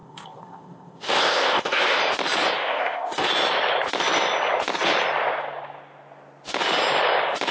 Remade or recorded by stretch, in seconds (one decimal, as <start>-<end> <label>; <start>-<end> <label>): 0.0-2.0 remade; 2.0-2.6 recorded; 2.6-3.3 remade; 3.3-7.5 recorded